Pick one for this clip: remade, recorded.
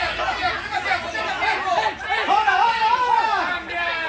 recorded